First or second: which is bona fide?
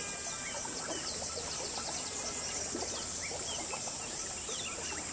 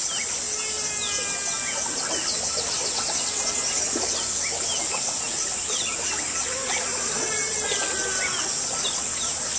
second